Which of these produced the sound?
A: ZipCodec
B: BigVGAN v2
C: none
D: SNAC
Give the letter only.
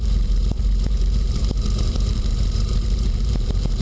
B